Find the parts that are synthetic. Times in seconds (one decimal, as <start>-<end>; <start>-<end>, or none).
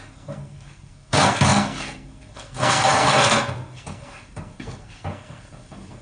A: 0.0-6.0